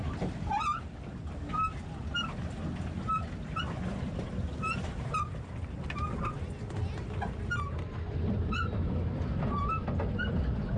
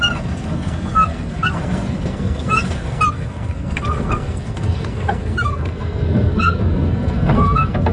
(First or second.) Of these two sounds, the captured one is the first